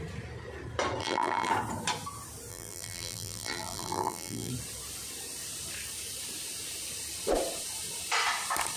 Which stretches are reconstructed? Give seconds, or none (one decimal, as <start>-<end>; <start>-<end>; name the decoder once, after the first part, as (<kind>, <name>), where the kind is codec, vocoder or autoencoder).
1.0-1.5 (vocoder, BigVGAN v2); 2.5-4.5